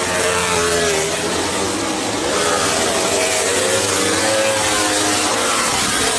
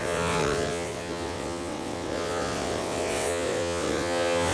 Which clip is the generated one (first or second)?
second